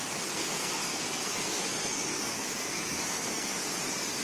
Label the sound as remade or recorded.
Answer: remade